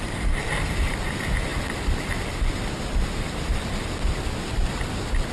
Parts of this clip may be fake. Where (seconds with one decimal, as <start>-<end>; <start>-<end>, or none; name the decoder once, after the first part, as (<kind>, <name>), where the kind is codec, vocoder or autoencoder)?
none

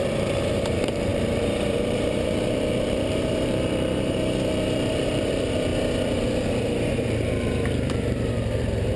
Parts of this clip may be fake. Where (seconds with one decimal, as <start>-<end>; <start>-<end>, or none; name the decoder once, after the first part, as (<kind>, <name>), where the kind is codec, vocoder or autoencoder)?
0.0-5.7 (vocoder, BigVGAN v2); 6.6-9.0

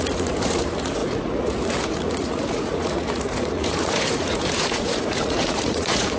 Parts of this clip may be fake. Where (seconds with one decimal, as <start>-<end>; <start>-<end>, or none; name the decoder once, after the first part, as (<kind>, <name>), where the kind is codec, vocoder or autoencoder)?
0.0-6.2 (vocoder, Vocos)

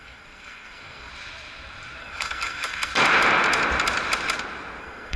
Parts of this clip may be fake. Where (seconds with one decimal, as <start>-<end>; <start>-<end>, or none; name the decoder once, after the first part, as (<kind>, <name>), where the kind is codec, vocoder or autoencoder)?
0.0-1.1 (codec, SNAC); 2.0-2.9; 4.8-5.2